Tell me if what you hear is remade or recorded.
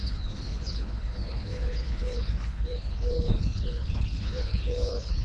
remade